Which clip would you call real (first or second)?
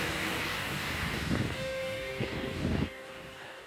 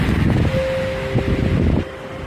second